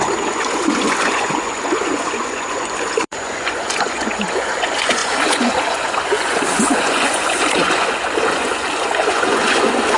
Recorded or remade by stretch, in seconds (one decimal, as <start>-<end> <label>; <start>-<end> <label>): 0.0-10.0 remade